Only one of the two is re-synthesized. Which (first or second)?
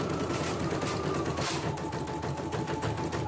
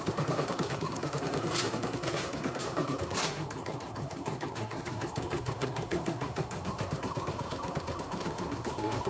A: second